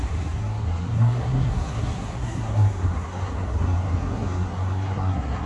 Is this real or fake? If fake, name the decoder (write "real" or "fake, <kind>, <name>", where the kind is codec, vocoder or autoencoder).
fake, codec, SNAC